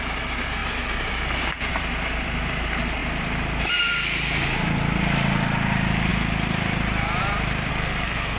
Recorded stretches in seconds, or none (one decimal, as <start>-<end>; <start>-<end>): 0.0-7.7